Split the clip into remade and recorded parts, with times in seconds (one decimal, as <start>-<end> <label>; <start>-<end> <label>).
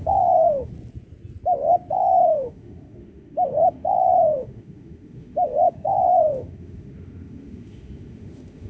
0.0-0.7 remade; 0.7-1.9 recorded; 1.9-8.7 remade